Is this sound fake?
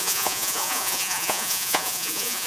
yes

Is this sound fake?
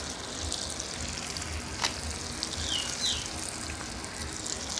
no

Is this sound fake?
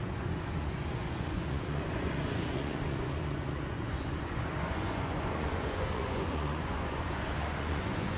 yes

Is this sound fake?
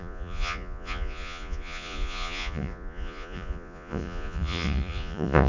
yes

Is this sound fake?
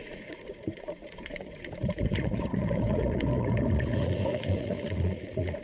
yes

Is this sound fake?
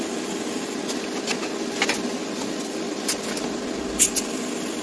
no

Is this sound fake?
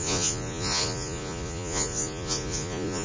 yes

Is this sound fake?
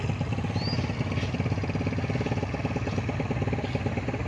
no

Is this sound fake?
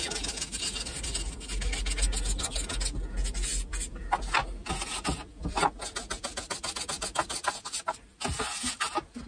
no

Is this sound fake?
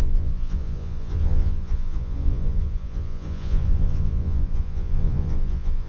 yes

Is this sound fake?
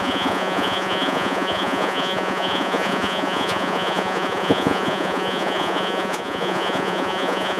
yes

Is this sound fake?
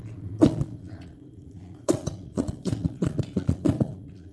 yes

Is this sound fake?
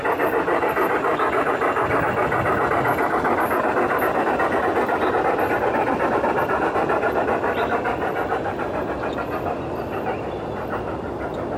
no